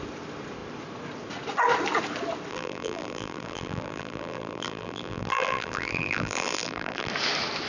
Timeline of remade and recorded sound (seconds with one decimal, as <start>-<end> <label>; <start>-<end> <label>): 0.0-2.5 recorded; 2.5-7.1 remade; 7.1-7.7 recorded

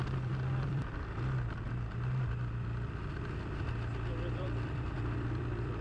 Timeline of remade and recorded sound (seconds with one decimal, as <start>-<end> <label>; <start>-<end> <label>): 0.0-0.8 remade; 0.8-4.3 recorded; 4.3-5.8 remade